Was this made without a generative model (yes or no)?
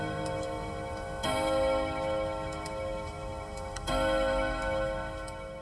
no